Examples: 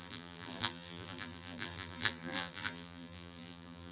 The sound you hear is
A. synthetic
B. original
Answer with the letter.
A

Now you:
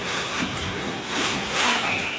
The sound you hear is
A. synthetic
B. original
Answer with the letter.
A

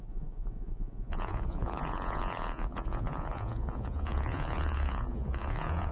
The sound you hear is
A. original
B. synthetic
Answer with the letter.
B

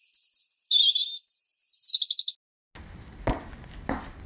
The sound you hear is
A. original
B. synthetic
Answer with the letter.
A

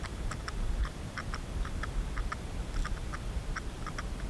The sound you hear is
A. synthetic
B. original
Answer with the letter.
B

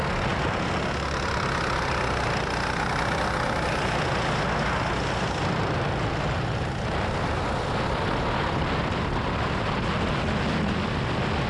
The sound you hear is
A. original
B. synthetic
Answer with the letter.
A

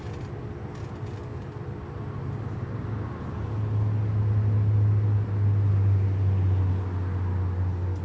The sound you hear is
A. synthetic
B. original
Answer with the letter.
B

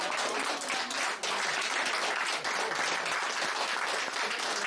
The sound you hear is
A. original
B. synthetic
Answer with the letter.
A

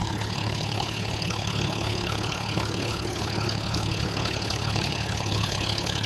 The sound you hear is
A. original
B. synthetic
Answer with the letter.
B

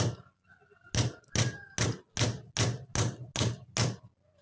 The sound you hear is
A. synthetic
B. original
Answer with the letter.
B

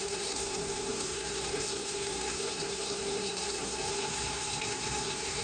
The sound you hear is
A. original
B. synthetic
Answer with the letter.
B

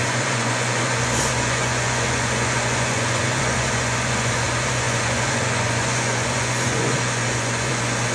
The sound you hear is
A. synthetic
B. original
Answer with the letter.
A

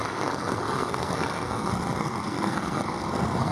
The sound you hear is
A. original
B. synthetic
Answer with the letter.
B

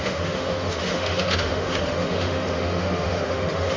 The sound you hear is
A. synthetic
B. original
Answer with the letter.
A